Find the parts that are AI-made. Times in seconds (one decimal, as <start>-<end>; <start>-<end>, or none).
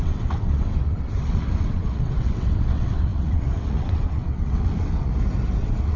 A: 0.0-5.1; 5.6-6.0